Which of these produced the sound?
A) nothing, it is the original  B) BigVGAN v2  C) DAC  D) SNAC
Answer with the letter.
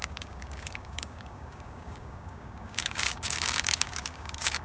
C